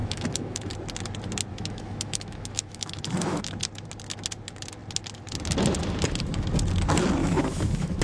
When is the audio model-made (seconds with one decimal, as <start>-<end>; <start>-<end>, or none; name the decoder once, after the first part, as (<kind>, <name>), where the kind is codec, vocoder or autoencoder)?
0.0-0.7 (autoencoder, DAC-VAE); 1.5-3.4; 7.2-8.0